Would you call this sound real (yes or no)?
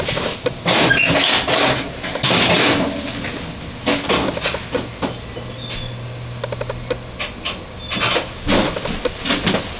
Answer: yes